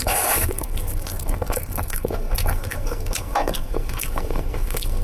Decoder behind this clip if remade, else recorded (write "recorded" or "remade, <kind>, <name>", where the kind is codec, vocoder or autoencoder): remade, codec, SNAC